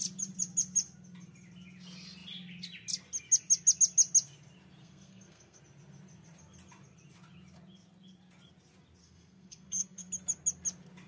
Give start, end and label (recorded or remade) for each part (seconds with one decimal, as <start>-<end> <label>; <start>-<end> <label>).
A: 0.0-4.8 recorded; 4.8-5.6 remade; 5.6-9.0 recorded; 9.0-10.1 remade; 10.1-11.1 recorded

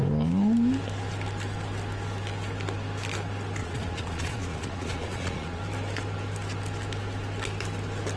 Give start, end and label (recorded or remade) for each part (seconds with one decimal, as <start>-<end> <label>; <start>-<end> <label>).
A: 0.0-3.6 recorded; 3.6-5.6 remade; 5.6-8.2 recorded